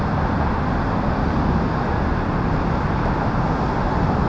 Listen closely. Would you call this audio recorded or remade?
recorded